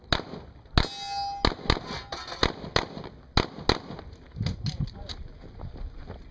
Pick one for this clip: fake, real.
real